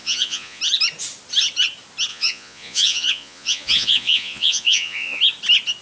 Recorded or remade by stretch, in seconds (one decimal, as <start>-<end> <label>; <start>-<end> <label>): 0.0-0.6 remade; 0.6-2.1 recorded; 2.1-5.2 remade; 5.2-5.8 recorded